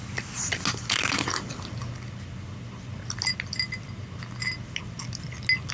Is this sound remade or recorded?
recorded